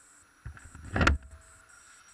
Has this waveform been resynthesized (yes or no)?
no